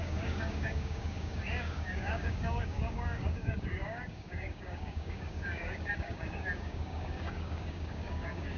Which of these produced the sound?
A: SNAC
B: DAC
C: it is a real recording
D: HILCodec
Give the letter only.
B